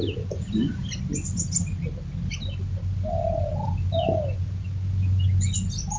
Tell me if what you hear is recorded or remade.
recorded